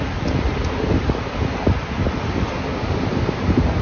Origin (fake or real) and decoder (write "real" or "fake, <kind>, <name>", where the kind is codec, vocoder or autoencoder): real